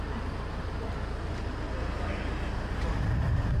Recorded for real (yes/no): yes